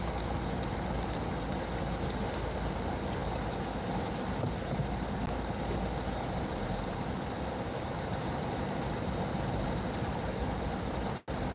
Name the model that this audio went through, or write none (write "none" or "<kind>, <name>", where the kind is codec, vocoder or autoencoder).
none